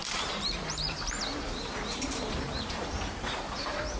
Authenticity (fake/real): fake